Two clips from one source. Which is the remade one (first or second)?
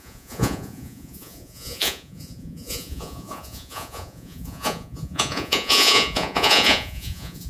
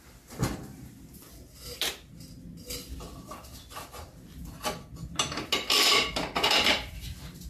first